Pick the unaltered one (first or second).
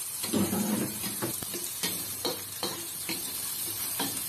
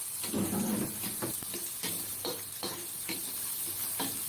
second